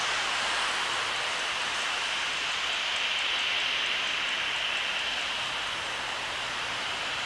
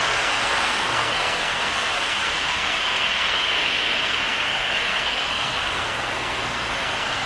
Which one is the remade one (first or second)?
second